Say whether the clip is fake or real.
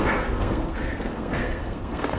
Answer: fake